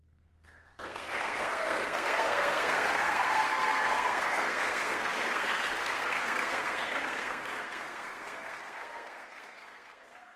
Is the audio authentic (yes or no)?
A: no